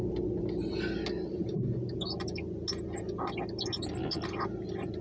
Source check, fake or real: real